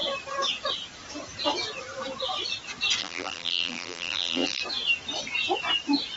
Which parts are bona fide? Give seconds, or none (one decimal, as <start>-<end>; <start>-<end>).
0.0-3.0; 4.6-6.2